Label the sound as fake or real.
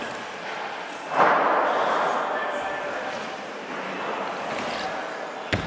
real